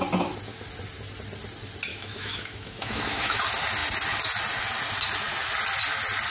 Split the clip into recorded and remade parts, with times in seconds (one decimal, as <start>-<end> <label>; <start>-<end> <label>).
0.0-1.9 recorded; 1.9-3.4 remade; 3.4-6.3 recorded